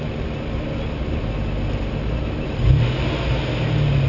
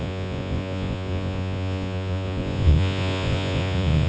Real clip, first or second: first